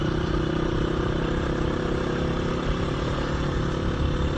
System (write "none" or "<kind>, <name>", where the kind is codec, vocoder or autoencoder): vocoder, BigVGAN v2